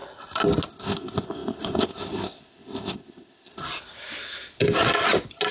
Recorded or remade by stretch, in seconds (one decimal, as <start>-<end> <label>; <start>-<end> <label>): 0.0-0.7 recorded; 0.7-3.6 remade; 3.6-5.5 recorded